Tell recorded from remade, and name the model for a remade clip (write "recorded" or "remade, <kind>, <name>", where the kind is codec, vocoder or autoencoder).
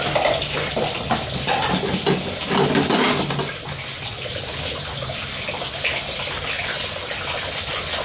recorded